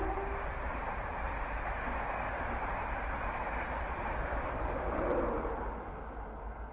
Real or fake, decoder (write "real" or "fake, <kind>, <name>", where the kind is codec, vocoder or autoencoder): real